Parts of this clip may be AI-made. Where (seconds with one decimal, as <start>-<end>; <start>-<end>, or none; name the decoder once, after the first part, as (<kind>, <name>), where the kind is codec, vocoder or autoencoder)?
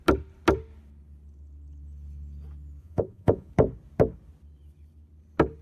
2.8-3.5 (vocoder, Vocos)